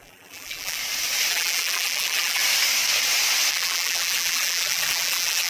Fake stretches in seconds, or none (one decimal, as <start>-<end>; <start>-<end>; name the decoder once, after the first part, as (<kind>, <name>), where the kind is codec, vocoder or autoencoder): 0.0-0.8 (vocoder, BigVGAN v2); 1.3-2.4; 3.5-5.5